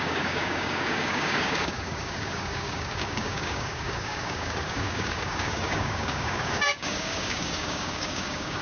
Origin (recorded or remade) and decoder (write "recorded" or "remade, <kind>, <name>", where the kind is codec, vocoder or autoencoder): remade, codec, DAC